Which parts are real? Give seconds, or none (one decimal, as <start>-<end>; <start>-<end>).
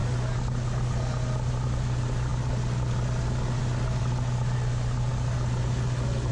0.0-6.3